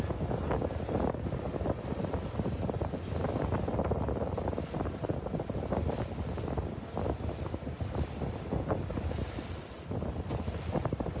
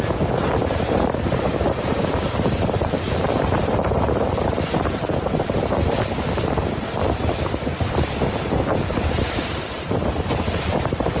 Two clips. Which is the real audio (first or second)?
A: first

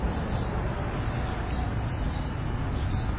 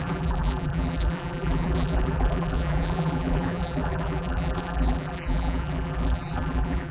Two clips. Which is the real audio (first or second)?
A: first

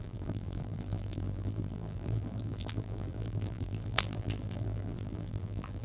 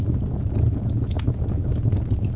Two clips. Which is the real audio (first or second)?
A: second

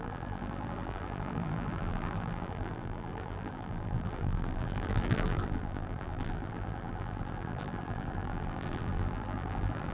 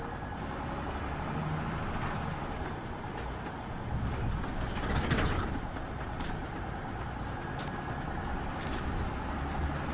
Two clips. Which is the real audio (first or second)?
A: second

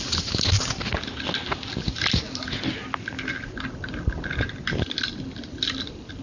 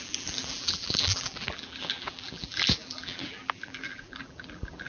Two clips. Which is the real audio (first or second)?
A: first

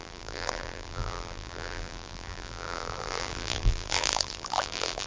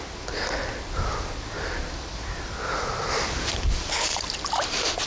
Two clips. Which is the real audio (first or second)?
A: second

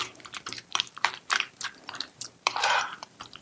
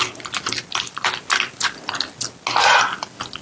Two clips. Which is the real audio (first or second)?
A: second